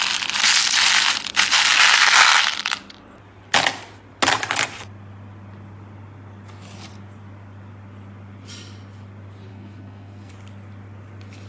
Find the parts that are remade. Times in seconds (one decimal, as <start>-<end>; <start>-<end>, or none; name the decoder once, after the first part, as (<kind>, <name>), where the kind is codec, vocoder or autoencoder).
9.5-10.3 (codec, SNAC)